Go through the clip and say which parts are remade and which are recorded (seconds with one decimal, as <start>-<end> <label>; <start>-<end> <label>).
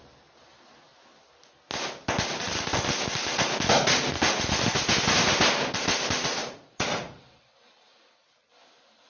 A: 0.0-6.4 recorded; 6.4-7.2 remade; 7.2-9.1 recorded